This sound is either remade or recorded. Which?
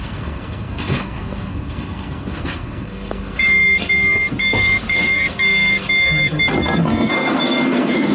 remade